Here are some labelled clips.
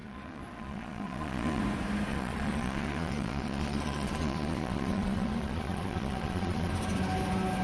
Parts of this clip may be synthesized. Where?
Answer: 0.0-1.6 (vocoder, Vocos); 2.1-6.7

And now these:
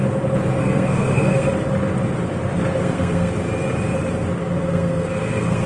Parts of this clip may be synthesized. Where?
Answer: 0.6-1.5 (codec, SNAC); 2.7-3.3; 4.5-5.7

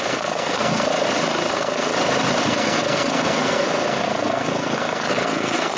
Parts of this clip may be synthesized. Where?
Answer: 0.0-0.9 (codec, SNAC); 1.5-1.9; 2.4-5.8

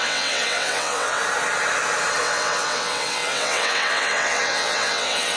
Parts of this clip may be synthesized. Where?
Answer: 0.0-1.2 (vocoder, WaveNeXt); 2.2-5.4

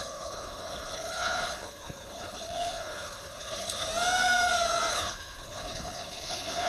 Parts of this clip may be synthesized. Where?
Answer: 0.0-3.9 (codec, HILCodec); 4.9-6.7